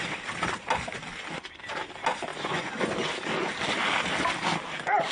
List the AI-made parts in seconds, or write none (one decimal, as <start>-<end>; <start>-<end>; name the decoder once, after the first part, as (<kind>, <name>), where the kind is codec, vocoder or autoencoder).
2.3-2.9 (vocoder, Vocos)